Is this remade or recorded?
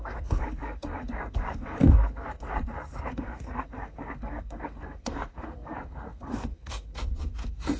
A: remade